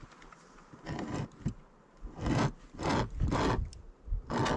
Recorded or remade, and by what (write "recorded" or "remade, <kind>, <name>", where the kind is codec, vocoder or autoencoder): recorded